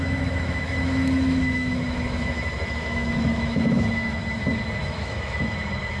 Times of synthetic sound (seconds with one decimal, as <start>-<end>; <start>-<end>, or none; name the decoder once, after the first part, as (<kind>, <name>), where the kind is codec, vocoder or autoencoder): 0.0-4.2 (autoencoder, DAC-VAE); 4.8-6.0